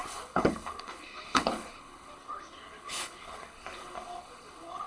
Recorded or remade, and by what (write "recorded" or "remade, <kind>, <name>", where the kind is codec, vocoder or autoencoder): remade, codec, HILCodec